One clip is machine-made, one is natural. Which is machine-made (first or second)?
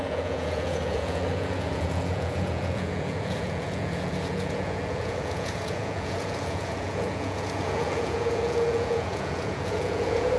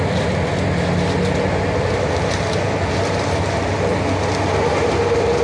first